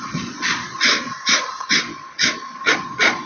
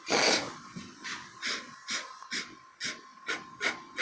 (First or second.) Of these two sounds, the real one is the second